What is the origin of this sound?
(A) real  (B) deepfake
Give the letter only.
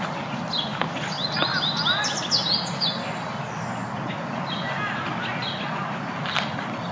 A